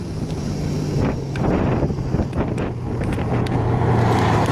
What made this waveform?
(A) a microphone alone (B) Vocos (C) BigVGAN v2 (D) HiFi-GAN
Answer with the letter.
C